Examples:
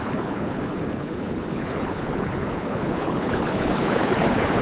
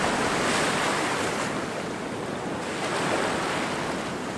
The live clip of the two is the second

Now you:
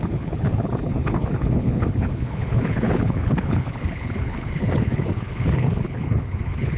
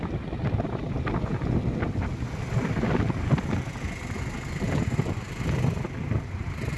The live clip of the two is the second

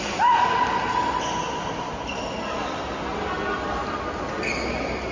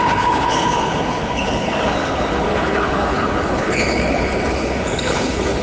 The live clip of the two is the first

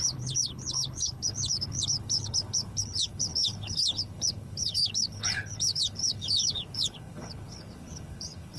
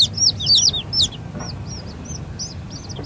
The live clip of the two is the second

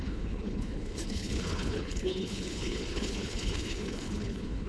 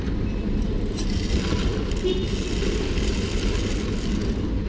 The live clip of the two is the second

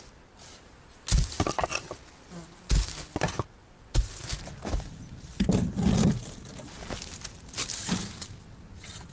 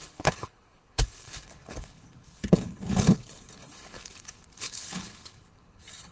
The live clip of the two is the first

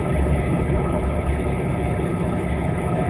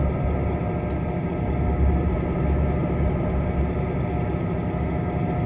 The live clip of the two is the second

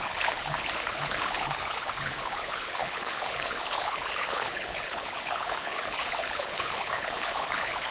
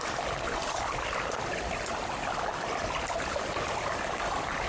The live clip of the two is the second